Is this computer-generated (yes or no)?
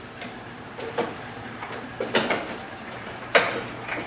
yes